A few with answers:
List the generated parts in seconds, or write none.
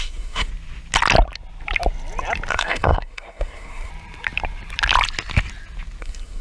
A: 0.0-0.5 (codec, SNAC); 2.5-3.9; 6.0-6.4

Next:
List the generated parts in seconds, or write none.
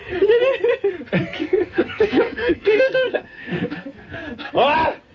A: 1.4-4.5 (codec, SNAC)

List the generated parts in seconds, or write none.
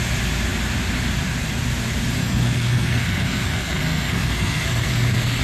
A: 2.2-5.4 (codec, SNAC)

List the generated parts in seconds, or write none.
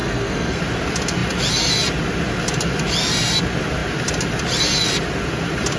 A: 0.0-0.6 (codec, SNAC)